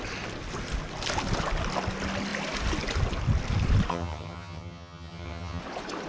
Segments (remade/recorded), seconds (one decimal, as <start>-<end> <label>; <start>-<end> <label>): 0.0-3.9 recorded; 3.9-5.6 remade; 5.6-6.1 recorded